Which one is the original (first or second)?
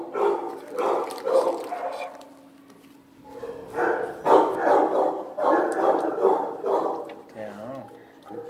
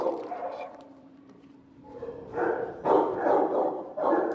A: first